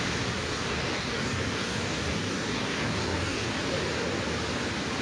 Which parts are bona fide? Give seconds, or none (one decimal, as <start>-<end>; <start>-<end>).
0.0-0.5; 3.5-5.0